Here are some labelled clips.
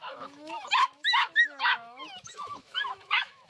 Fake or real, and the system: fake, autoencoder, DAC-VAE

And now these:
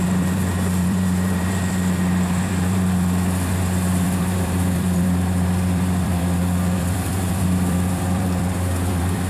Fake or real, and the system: fake, vocoder, BigVGAN v2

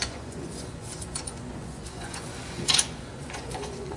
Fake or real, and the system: fake, vocoder, Vocos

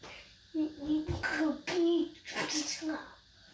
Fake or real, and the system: real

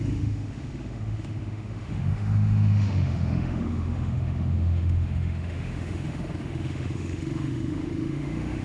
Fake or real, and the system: fake, autoencoder, DAC-VAE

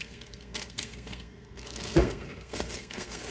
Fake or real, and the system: fake, codec, SNAC